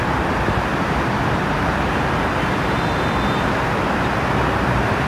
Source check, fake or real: fake